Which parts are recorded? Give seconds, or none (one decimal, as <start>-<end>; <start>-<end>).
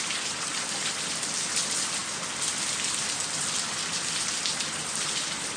0.0-5.6